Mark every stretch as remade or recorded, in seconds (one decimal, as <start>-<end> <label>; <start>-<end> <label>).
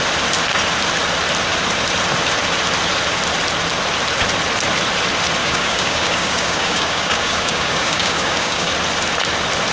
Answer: 0.0-5.4 recorded; 5.4-8.7 remade; 8.7-9.7 recorded